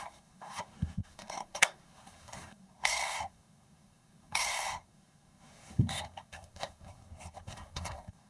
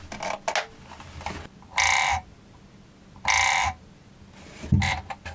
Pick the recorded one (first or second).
second